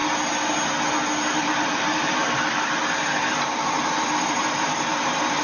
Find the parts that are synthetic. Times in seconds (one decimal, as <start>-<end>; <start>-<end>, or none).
1.4-2.8; 3.2-5.4